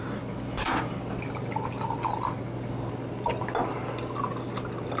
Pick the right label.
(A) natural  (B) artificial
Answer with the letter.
A